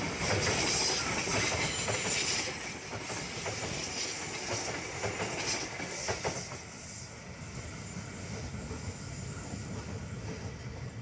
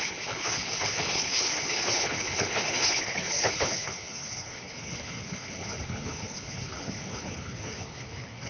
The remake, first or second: second